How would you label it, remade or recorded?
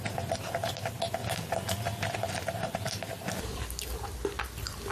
recorded